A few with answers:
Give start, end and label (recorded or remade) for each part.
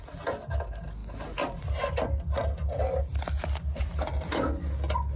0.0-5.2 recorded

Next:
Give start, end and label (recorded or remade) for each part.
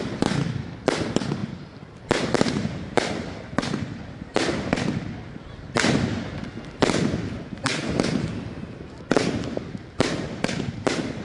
0.0-1.4 recorded; 1.4-3.4 remade; 3.4-11.2 recorded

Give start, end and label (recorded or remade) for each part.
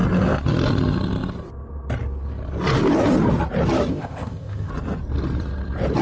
0.0-3.9 recorded; 3.9-4.7 remade; 4.7-6.0 recorded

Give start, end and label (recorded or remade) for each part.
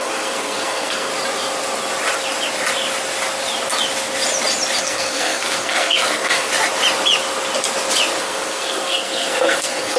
0.0-1.1 remade; 1.1-4.8 recorded; 4.8-6.5 remade; 6.5-8.2 recorded; 8.2-10.0 remade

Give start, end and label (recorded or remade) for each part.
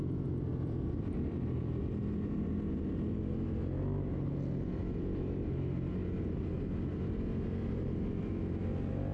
0.0-0.5 recorded; 0.5-3.3 remade; 3.3-6.9 recorded; 6.9-8.3 remade; 8.3-9.1 recorded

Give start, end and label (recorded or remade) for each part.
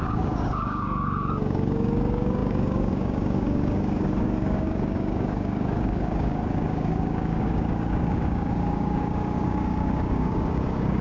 0.0-11.0 remade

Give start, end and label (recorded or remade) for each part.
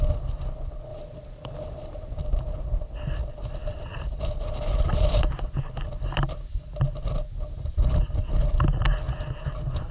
0.0-0.9 recorded; 0.9-2.2 remade; 2.2-9.9 recorded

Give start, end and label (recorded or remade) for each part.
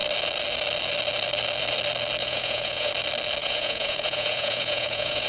0.0-2.2 recorded; 2.2-2.9 remade; 2.9-3.4 recorded; 3.4-5.3 remade